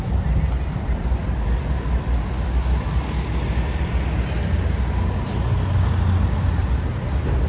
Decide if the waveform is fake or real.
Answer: real